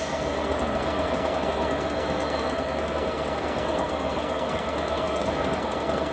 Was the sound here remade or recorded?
remade